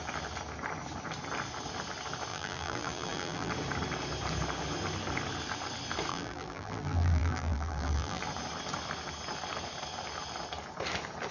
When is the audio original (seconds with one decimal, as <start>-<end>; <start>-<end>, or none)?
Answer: 0.0-2.3; 3.5-6.1; 8.2-11.3